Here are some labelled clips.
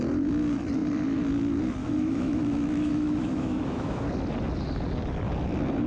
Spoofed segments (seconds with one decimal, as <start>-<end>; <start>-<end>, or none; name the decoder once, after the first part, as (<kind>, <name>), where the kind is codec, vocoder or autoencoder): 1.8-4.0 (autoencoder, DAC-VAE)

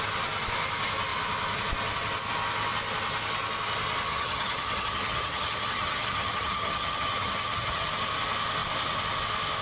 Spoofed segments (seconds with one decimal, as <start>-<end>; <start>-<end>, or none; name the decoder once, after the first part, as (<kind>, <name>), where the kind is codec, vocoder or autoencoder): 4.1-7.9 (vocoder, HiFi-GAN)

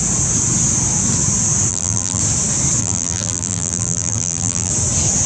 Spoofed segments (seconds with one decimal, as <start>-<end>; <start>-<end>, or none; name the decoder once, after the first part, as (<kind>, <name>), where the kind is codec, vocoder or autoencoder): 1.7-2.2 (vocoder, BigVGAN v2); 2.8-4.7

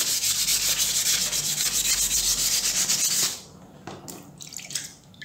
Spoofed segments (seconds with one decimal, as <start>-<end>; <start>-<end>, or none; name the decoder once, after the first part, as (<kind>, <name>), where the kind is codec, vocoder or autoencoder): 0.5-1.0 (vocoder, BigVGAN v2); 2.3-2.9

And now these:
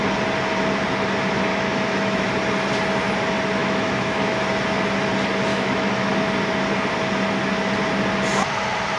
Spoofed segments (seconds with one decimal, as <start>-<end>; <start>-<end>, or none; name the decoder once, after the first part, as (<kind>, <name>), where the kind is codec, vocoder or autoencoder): 1.5-2.3 (autoencoder, DAC-VAE); 3.6-4.4; 5.5-6.1

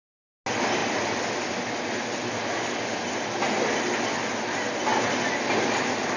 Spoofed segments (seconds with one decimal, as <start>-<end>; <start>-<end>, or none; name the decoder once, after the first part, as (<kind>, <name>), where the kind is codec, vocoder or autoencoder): none